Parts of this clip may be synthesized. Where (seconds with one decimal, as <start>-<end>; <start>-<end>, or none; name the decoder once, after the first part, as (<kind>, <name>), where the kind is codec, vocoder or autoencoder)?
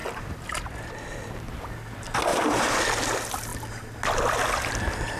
0.0-0.6 (vocoder, BigVGAN v2); 2.3-2.8